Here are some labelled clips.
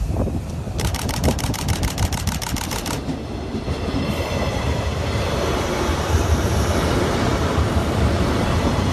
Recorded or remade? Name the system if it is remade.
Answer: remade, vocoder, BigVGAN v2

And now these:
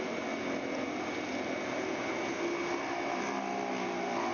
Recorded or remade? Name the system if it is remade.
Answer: recorded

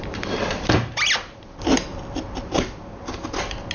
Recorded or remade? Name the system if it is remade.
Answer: recorded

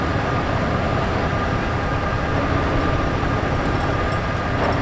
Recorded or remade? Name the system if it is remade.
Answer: remade, vocoder, BigVGAN v2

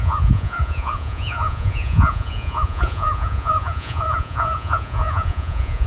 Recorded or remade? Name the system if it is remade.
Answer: remade, vocoder, Vocos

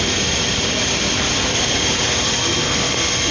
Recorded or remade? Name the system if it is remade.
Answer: recorded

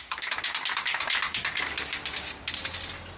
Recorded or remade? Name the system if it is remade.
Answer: recorded